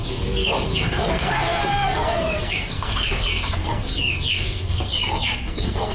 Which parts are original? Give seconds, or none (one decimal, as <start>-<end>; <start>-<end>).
none